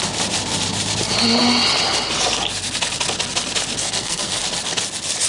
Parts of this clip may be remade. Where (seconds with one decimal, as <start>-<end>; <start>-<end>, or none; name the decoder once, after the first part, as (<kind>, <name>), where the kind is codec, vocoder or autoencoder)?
3.8-4.4 (codec, SNAC)